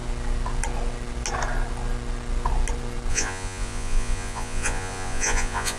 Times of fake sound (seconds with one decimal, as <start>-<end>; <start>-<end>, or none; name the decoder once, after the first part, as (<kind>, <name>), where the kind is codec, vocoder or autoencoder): 3.1-5.8 (vocoder, Vocos)